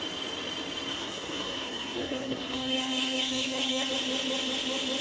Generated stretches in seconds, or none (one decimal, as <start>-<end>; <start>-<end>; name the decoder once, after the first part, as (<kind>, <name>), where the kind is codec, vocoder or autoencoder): 0.9-3.9 (codec, SNAC)